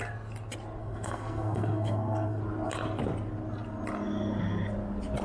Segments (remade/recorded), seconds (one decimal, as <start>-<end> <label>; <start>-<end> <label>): 0.0-0.8 recorded; 0.8-2.4 remade; 2.4-5.2 recorded